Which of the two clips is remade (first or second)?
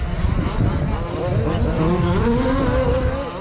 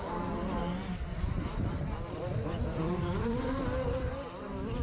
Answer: second